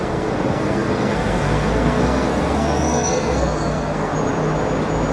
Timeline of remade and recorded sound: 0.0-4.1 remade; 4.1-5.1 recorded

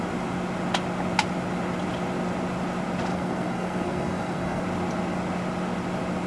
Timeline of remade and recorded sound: 0.0-3.1 recorded; 3.1-4.6 remade; 4.6-6.3 recorded